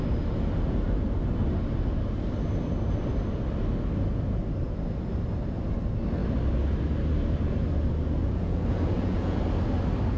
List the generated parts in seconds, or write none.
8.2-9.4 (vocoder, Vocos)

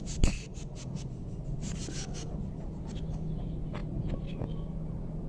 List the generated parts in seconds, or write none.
none